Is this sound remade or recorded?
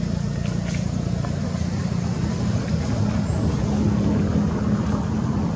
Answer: recorded